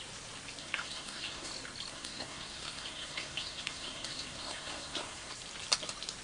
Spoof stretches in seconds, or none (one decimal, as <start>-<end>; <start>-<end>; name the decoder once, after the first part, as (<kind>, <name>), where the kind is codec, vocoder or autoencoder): 0.6-1.5 (codec, SNAC); 1.9-5.3